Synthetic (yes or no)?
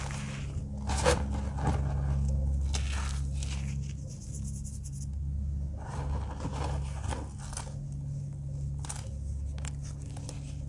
no